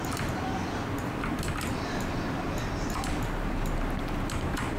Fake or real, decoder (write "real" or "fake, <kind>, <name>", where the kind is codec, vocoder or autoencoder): real